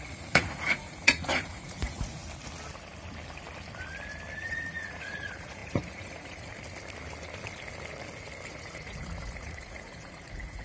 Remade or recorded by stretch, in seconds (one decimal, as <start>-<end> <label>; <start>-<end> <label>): 0.0-2.2 remade; 2.2-4.4 recorded; 4.4-6.5 remade; 6.5-8.5 recorded; 8.5-10.6 remade